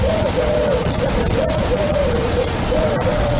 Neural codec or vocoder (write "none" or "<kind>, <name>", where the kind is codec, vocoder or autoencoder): vocoder, Vocos